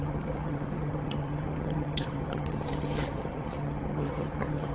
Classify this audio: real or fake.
fake